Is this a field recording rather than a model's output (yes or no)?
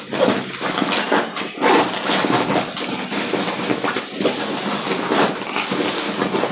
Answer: yes